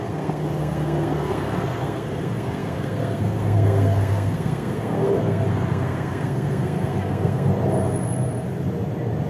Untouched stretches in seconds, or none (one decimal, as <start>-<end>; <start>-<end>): 7.5-9.3